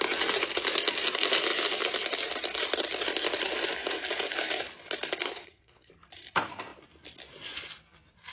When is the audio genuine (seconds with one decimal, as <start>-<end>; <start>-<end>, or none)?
0.0-5.2; 5.9-8.3